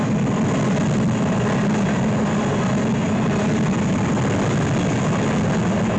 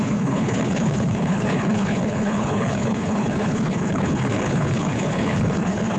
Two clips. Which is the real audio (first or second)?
first